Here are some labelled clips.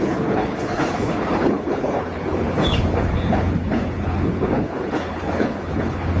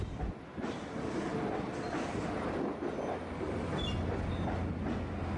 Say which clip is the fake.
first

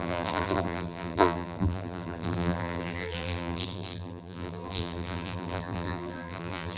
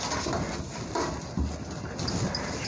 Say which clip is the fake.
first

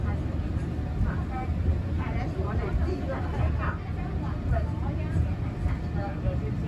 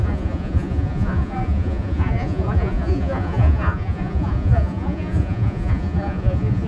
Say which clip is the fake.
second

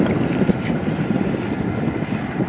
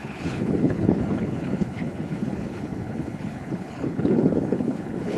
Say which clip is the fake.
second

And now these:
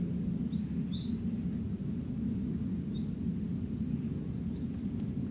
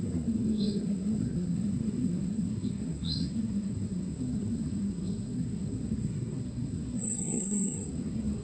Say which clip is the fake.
second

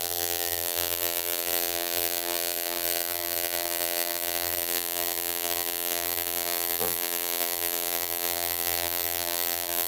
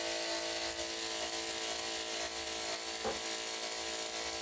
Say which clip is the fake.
first